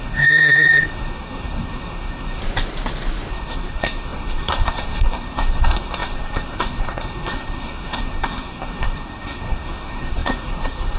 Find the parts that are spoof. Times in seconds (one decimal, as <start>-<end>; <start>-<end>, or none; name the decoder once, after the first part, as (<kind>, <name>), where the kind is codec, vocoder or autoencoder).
0.0-2.4 (codec, SNAC); 3.3-11.0

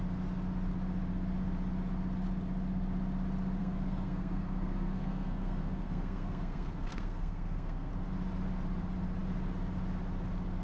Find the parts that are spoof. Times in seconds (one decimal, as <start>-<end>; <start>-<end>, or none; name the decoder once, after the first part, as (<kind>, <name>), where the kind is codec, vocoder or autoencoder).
3.6-7.9 (codec, SNAC)

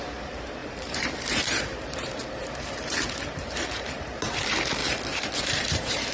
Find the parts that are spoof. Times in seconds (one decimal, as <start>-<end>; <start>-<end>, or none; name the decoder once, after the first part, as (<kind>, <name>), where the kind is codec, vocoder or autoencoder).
0.0-4.8 (vocoder, BigVGAN v2); 5.4-6.1